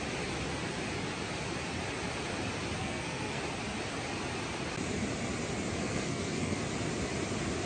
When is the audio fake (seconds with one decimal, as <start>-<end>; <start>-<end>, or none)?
2.8-3.4; 5.8-6.6